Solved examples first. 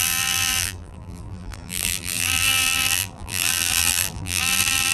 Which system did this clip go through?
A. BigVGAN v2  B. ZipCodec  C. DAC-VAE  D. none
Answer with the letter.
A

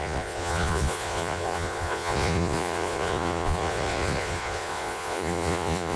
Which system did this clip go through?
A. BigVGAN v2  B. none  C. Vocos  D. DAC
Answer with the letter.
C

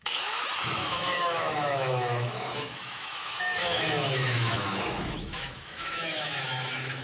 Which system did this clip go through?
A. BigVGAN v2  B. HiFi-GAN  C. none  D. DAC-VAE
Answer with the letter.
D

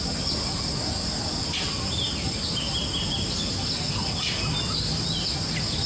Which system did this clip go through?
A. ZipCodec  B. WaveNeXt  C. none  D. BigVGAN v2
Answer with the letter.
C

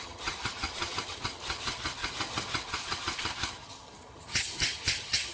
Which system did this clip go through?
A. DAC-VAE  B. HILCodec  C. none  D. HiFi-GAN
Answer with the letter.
D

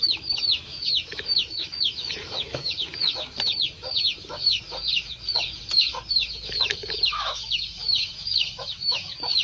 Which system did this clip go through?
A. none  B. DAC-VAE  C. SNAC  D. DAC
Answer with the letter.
B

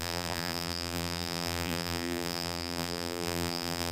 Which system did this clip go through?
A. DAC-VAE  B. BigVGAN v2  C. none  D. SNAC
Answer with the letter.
B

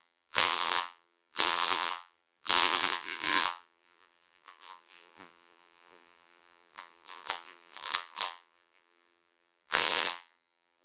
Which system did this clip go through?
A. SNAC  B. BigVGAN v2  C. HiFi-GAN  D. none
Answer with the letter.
B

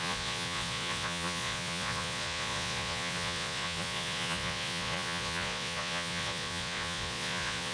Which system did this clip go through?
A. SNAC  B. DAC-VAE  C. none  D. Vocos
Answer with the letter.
D